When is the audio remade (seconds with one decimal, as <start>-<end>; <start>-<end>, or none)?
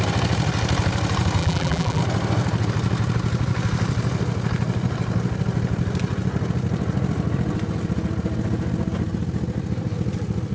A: 1.4-2.0